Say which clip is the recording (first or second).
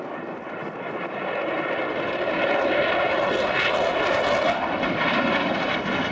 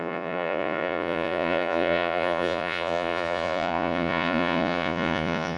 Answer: first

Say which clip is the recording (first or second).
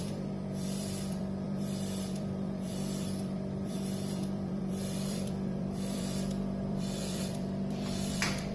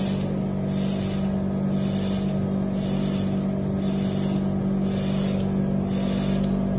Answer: second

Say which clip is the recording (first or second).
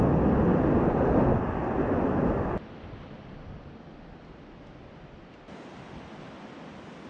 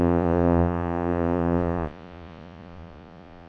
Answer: first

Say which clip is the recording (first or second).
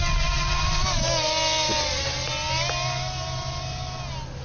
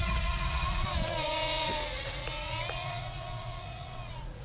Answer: first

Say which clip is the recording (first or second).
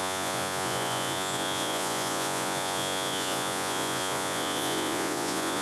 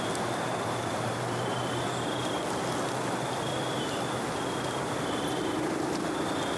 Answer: second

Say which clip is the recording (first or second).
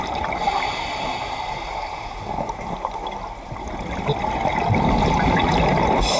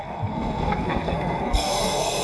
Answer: first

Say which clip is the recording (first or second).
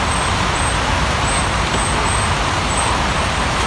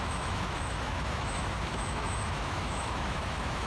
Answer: first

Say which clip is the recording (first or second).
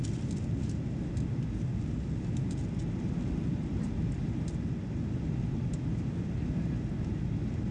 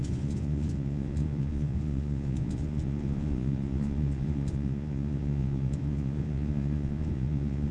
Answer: first